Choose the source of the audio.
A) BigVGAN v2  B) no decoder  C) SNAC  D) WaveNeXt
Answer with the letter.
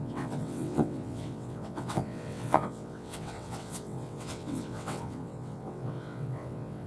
D